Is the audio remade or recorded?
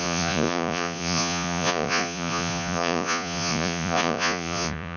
remade